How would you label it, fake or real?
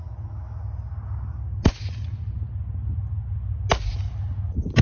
real